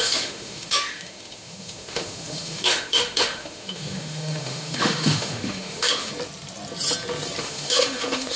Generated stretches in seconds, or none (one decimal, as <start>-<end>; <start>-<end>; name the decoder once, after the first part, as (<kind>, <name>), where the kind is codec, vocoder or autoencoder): 0.0-6.1 (autoencoder, DAC-VAE); 7.4-8.4